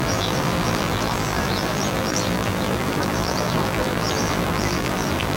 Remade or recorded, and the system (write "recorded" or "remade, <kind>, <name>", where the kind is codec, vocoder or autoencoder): remade, vocoder, BigVGAN v2